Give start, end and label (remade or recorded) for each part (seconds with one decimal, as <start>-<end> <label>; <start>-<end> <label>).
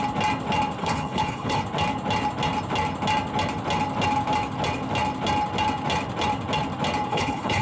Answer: 0.0-0.8 recorded; 0.8-1.6 remade; 1.6-7.1 recorded; 7.1-7.6 remade